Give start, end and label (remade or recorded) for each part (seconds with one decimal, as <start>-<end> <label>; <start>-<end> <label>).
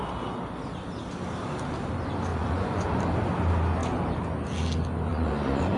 0.0-2.3 recorded; 2.3-3.0 remade; 3.0-5.1 recorded; 5.1-5.8 remade